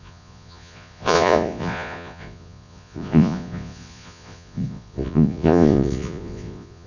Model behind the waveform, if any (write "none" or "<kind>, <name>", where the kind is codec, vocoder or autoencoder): vocoder, Vocos